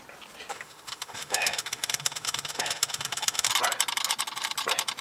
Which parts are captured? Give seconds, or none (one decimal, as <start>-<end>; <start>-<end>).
0.0-0.5; 3.5-5.0